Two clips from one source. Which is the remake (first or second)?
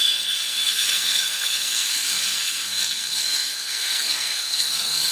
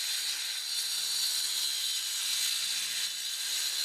first